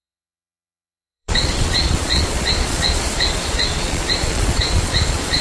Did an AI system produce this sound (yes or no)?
yes